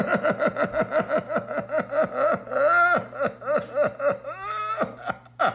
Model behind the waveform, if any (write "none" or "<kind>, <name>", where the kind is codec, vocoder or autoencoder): none